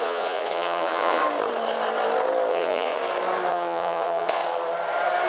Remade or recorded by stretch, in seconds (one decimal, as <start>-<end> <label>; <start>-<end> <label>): 0.0-1.2 remade; 1.2-2.5 recorded; 2.5-3.0 remade; 3.0-3.5 recorded; 3.5-4.4 remade; 4.4-5.3 recorded